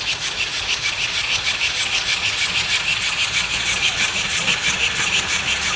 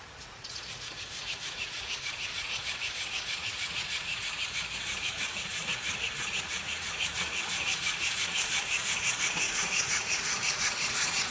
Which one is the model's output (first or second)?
second